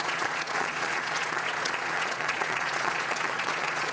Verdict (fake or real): fake